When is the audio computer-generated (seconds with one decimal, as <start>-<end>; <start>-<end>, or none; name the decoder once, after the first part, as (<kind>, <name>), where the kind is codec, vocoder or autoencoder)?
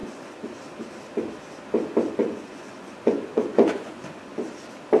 0.0-0.6 (vocoder, Vocos); 2.2-4.3